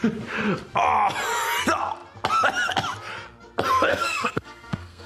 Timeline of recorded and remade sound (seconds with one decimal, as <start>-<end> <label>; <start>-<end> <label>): 0.0-3.9 recorded; 3.9-5.1 remade